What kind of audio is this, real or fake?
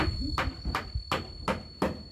real